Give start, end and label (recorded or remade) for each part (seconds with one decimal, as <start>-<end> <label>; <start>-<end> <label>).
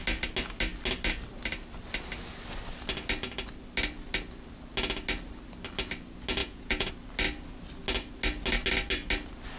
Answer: 0.0-6.4 recorded; 6.4-6.9 remade; 6.9-9.6 recorded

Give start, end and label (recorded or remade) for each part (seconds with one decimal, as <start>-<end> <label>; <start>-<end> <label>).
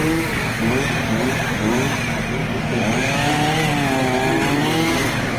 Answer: 0.0-0.7 remade; 0.7-2.4 recorded; 2.4-3.3 remade; 3.3-4.6 recorded; 4.6-5.4 remade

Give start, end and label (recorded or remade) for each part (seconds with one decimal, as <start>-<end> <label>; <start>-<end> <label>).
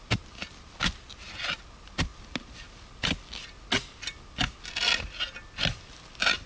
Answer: 0.0-6.5 recorded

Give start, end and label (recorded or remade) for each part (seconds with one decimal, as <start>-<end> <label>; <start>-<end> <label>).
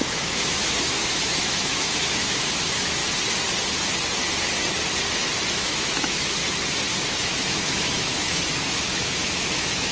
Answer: 0.0-3.0 remade; 3.0-5.5 recorded; 5.5-6.4 remade; 6.4-7.1 recorded; 7.1-9.9 remade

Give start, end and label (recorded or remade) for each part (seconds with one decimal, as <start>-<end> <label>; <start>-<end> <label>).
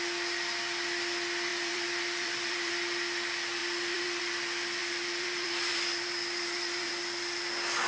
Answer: 0.0-1.5 recorded; 1.5-2.7 remade; 2.7-3.6 recorded; 3.6-4.2 remade; 4.2-4.8 recorded; 4.8-6.9 remade; 6.9-7.9 recorded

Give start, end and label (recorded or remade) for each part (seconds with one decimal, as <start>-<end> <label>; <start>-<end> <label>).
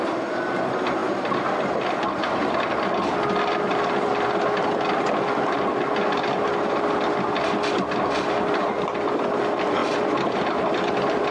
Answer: 0.0-11.3 recorded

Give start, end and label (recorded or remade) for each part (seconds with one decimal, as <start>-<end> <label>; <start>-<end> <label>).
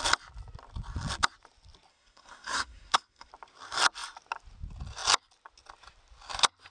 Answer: 0.0-1.9 recorded; 1.9-3.3 remade; 3.3-6.7 recorded